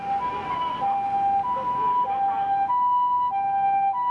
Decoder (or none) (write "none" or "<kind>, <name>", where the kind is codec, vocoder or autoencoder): none